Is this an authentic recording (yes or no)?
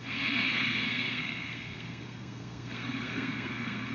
no